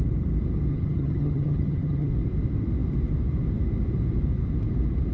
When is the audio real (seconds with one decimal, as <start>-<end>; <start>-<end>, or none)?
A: 0.0-0.7; 2.1-5.1